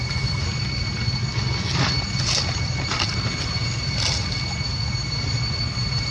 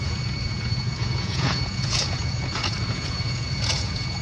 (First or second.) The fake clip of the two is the second